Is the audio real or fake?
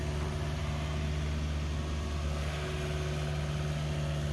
real